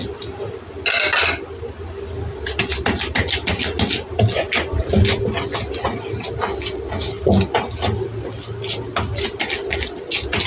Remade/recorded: recorded